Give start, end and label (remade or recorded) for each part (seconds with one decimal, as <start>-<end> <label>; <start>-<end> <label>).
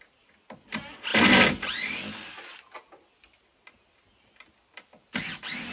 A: 0.0-5.7 recorded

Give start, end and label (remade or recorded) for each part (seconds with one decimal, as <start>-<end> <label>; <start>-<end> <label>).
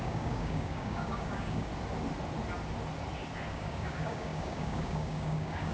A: 0.0-1.7 remade; 1.7-3.5 recorded; 3.5-5.7 remade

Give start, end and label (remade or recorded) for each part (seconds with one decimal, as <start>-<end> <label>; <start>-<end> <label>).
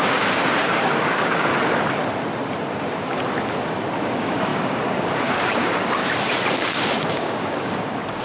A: 0.0-1.5 remade; 1.5-4.0 recorded; 4.0-6.0 remade; 6.0-6.6 recorded; 6.6-8.2 remade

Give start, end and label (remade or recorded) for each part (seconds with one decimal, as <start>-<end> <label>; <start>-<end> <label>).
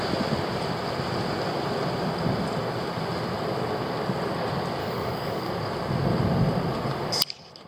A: 0.0-4.8 recorded; 4.8-5.5 remade; 5.5-7.7 recorded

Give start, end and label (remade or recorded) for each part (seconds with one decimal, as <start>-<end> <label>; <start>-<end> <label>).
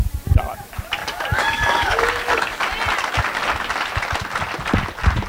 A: 0.0-1.0 recorded; 1.0-2.6 remade; 2.6-5.3 recorded